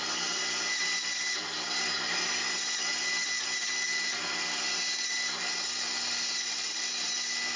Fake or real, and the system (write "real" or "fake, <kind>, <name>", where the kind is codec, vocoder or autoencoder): real